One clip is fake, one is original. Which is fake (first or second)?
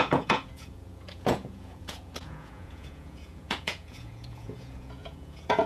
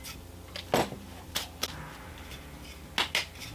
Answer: first